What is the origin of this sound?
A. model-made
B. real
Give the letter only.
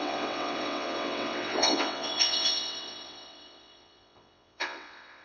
A